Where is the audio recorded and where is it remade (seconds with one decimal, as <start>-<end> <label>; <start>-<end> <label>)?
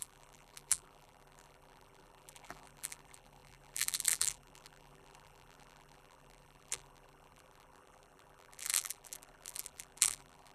0.0-10.5 remade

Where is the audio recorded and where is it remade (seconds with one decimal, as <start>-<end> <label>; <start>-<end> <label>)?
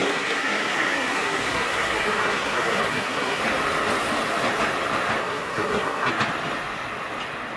0.0-3.4 remade; 3.4-5.2 recorded; 5.2-6.1 remade; 6.1-7.6 recorded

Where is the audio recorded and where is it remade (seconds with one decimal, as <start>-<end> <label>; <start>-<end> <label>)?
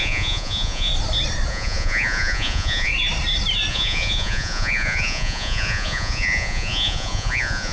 0.0-0.9 remade; 0.9-1.5 recorded; 1.5-2.9 remade; 2.9-3.7 recorded; 3.7-7.7 remade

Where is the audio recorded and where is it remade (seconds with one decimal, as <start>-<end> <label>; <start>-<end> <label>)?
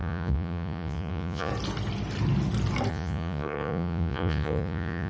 0.0-1.5 remade; 1.5-2.9 recorded; 2.9-5.1 remade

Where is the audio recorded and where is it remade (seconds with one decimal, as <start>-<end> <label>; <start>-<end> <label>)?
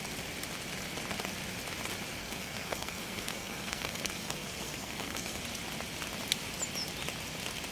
0.0-2.2 recorded; 2.2-5.4 remade; 5.4-7.7 recorded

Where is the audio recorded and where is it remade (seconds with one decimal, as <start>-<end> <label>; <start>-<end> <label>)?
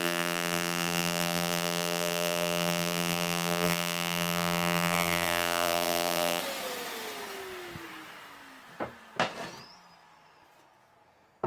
0.0-6.4 remade; 6.4-11.5 recorded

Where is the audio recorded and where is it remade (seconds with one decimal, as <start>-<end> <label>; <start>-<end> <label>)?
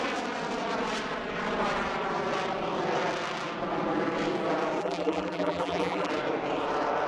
0.0-4.8 recorded; 4.8-6.1 remade; 6.1-7.1 recorded